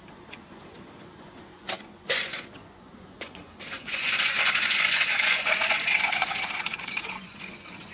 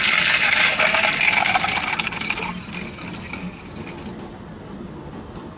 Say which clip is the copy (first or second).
first